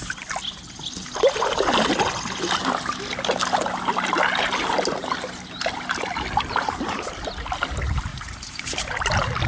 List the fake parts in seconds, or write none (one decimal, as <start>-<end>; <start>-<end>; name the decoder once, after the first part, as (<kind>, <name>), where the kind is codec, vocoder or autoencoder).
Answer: 8.1-8.6 (vocoder, Vocos)